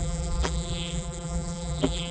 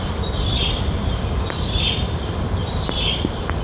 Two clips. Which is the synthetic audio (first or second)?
first